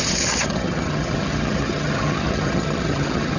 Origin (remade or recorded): remade